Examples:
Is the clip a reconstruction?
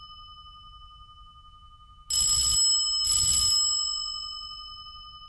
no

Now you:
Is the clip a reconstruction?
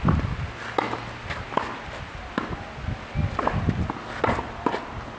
no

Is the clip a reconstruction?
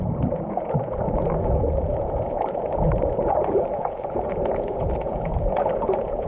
yes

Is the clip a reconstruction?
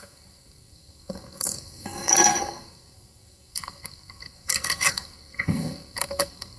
yes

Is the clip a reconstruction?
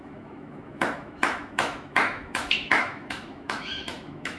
yes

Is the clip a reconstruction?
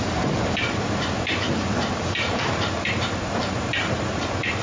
yes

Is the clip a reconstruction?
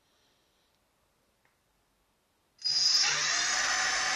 no